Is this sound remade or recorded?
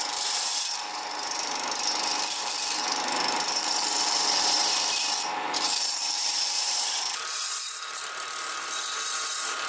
remade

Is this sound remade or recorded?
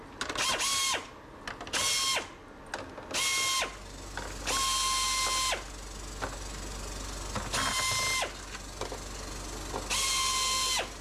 recorded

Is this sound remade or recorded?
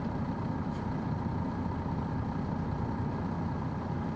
remade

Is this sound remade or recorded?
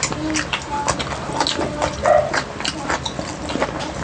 recorded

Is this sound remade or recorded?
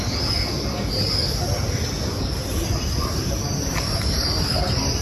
recorded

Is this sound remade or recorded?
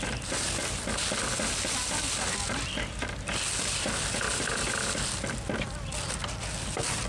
recorded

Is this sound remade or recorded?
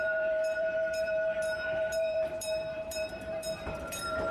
remade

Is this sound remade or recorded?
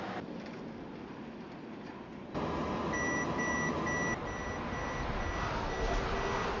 recorded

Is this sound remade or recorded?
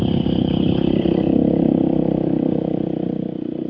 remade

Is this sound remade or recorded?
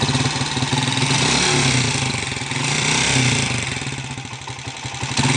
recorded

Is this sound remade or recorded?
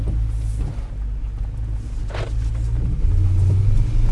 recorded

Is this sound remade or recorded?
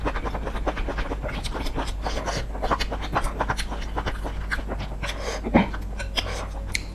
recorded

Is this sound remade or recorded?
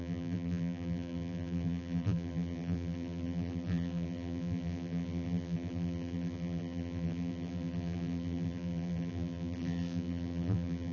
remade